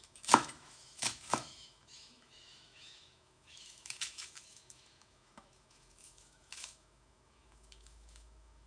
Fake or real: fake